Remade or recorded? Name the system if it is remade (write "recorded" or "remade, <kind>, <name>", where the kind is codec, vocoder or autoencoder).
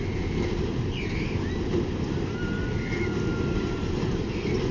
recorded